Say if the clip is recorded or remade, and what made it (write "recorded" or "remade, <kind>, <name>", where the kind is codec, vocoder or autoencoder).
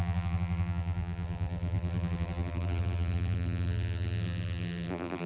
remade, vocoder, BigVGAN v2